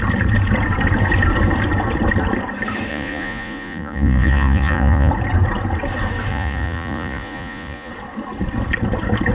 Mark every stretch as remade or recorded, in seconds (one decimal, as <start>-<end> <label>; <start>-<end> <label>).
0.0-2.9 recorded; 2.9-5.1 remade; 5.1-6.3 recorded; 6.3-7.9 remade; 7.9-9.3 recorded